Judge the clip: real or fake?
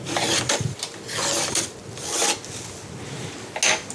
real